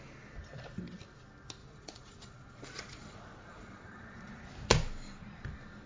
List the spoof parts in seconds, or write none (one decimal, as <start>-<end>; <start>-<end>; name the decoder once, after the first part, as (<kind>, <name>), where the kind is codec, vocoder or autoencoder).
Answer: 1.6-4.5 (vocoder, Vocos)